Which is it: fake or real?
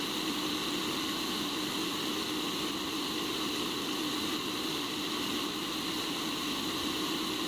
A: real